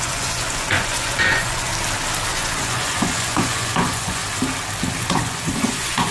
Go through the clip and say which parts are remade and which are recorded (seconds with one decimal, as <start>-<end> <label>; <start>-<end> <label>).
0.0-1.7 remade; 1.7-2.3 recorded; 2.3-4.2 remade; 4.2-5.0 recorded; 5.0-6.1 remade